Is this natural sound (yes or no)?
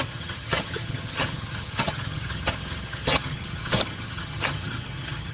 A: no